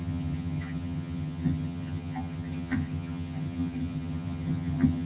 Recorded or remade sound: remade